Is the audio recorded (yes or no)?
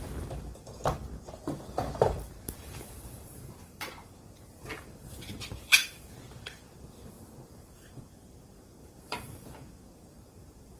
no